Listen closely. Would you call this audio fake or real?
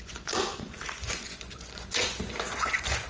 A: fake